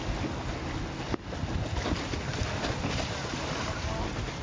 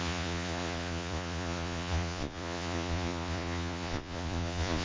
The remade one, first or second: second